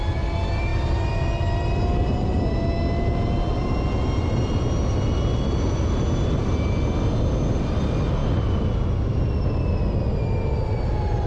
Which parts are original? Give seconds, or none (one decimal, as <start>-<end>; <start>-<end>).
0.0-11.3